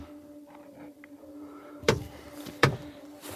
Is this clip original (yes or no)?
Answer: no